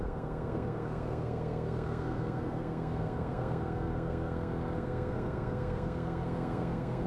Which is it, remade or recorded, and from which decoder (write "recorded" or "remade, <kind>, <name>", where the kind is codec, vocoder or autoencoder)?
remade, codec, SNAC